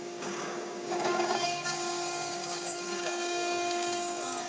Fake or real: fake